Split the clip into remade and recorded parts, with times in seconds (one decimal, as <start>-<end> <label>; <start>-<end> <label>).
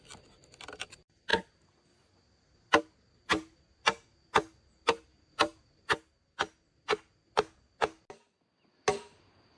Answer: 0.0-9.6 recorded